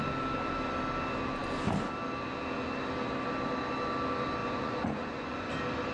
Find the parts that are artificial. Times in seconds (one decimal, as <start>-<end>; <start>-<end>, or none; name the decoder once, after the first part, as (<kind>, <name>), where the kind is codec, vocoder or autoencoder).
4.4-5.5 (vocoder, Vocos)